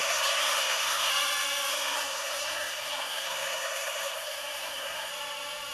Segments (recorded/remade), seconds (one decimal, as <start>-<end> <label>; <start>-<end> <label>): 0.0-1.1 remade; 1.1-1.7 recorded; 1.7-5.1 remade; 5.1-5.7 recorded

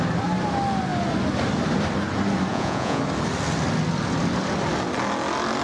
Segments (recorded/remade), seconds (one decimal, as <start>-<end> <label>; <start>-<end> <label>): 0.0-2.5 recorded; 2.5-3.0 remade; 3.0-5.6 recorded

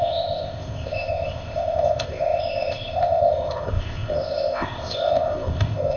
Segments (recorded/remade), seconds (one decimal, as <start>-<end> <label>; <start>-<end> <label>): 0.0-6.0 remade

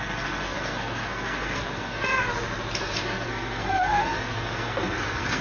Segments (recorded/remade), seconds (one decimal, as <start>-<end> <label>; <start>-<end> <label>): 0.0-2.2 remade; 2.2-2.8 recorded; 2.8-5.4 remade

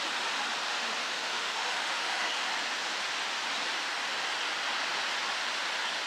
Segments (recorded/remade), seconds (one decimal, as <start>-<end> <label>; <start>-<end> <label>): 0.0-1.0 recorded; 1.0-2.5 remade; 2.5-6.1 recorded